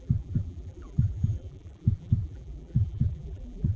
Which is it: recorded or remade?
remade